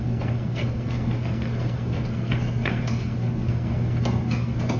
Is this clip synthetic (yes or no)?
yes